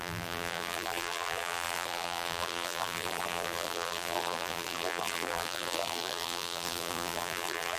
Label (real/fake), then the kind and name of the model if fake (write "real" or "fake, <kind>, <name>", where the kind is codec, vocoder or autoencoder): fake, vocoder, BigVGAN v2